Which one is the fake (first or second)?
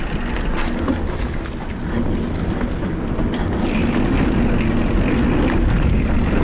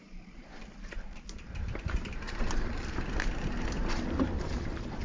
second